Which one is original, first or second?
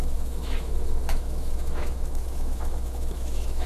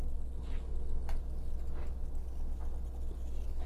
second